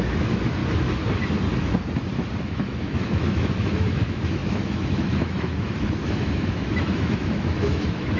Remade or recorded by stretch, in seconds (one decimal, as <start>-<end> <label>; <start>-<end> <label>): 0.0-0.6 remade; 0.6-2.4 recorded; 2.4-8.2 remade